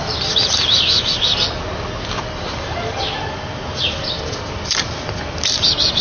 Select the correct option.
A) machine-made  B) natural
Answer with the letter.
B